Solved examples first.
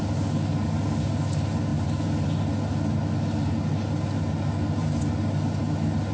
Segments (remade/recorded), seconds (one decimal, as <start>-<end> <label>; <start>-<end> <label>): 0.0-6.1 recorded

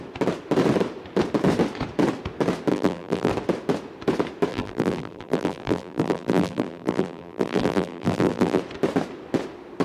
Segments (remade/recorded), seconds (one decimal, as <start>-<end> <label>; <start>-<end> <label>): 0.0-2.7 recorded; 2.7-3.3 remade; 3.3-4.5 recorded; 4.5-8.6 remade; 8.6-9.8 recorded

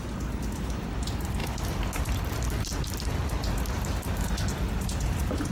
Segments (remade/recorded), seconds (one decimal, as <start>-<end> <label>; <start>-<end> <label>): 0.0-5.5 recorded

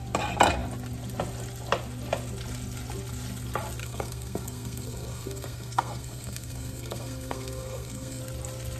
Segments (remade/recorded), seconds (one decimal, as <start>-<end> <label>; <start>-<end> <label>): 0.0-3.8 recorded; 3.8-8.2 remade; 8.2-8.8 recorded